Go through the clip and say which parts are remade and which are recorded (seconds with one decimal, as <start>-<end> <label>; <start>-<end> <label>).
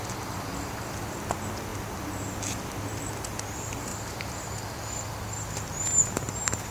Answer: 0.0-3.9 recorded; 3.9-6.7 remade